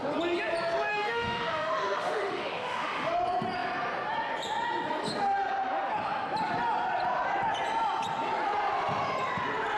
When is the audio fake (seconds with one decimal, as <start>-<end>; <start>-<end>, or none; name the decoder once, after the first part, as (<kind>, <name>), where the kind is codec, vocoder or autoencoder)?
0.9-3.1 (autoencoder, DAC-VAE)